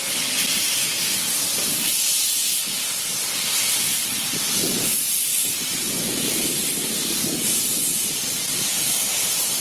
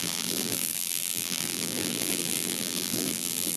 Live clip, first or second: first